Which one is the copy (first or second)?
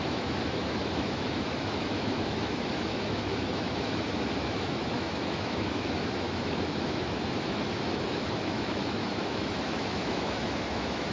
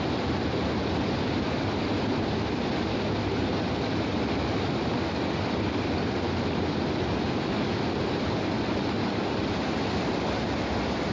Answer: first